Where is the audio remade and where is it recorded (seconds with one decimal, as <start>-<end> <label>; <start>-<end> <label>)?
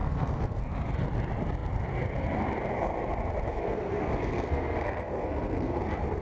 0.0-0.6 remade; 0.6-3.5 recorded; 3.5-5.8 remade; 5.8-6.2 recorded